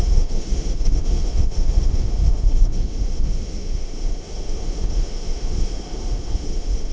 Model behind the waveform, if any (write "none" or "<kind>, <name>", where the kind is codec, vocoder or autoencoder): autoencoder, DAC-VAE